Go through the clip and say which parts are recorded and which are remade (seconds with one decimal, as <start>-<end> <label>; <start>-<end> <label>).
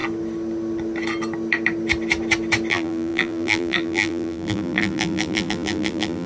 0.0-2.7 recorded; 2.7-6.3 remade